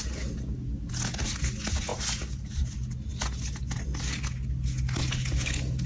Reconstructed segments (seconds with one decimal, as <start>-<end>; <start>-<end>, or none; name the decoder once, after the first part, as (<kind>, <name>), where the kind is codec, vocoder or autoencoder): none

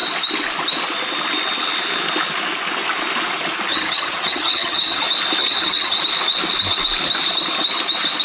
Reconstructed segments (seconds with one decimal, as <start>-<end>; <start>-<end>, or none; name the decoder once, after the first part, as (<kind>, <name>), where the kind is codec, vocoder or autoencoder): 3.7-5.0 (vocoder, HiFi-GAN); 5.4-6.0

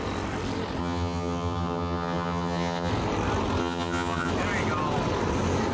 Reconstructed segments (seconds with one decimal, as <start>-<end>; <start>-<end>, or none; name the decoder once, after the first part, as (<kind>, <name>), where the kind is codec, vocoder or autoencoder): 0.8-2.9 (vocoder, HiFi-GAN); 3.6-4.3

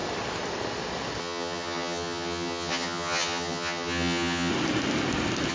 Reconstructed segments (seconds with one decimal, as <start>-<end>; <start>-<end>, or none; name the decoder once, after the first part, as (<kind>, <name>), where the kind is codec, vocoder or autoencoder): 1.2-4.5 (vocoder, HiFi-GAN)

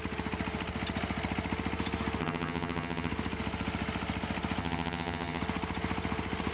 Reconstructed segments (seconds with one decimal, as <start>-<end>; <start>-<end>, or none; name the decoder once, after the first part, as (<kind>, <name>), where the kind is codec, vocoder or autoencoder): 2.2-3.1 (vocoder, HiFi-GAN); 4.6-5.4